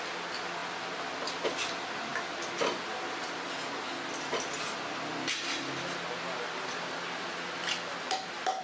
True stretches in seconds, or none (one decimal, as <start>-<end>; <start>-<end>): 0.0-8.6